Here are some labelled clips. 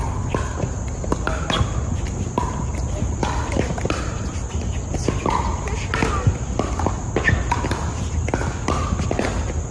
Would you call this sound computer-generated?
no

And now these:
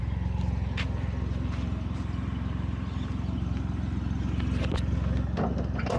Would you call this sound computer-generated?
no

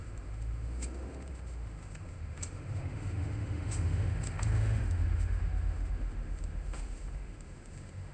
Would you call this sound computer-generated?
yes